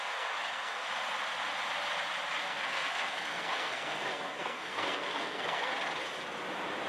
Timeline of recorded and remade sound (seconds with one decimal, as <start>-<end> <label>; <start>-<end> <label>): 0.0-0.9 remade; 0.9-2.4 recorded; 2.4-5.7 remade; 5.7-6.9 recorded